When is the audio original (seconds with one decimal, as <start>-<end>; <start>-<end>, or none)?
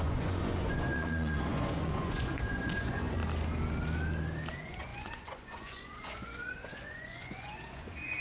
3.2-4.5